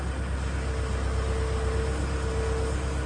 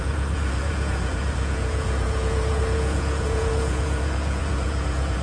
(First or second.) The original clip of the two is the first